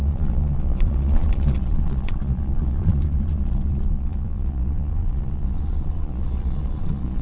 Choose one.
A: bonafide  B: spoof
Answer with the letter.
B